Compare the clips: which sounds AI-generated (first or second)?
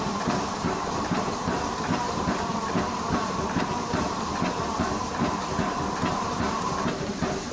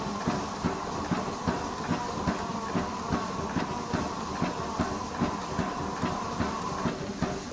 first